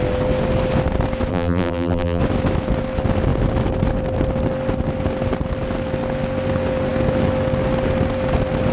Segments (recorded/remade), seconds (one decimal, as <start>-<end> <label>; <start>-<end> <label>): 0.0-1.3 recorded; 1.3-2.2 remade; 2.2-8.7 recorded